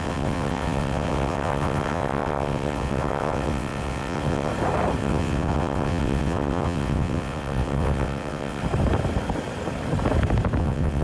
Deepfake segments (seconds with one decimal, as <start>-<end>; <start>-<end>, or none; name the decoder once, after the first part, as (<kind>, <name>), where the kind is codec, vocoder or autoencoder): 0.0-4.5 (vocoder, WaveNeXt); 5.0-8.6; 10.6-11.0